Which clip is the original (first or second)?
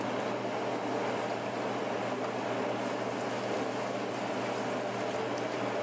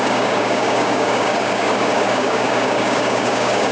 first